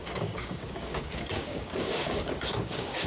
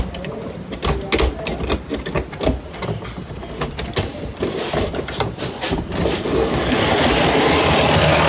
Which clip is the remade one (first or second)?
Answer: first